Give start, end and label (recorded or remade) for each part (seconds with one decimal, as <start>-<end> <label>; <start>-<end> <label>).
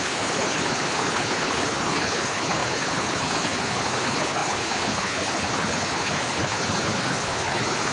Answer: 0.0-7.9 remade